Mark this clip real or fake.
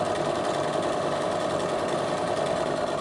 real